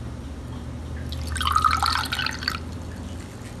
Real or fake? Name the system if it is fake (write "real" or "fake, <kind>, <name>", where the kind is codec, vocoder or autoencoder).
real